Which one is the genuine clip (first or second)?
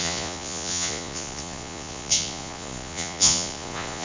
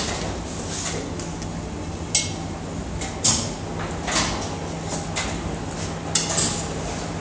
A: second